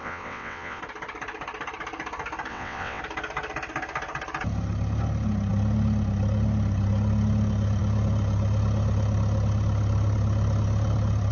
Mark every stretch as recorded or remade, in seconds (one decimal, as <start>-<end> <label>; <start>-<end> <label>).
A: 0.0-0.8 remade; 0.8-2.5 recorded; 2.5-3.0 remade; 3.0-11.3 recorded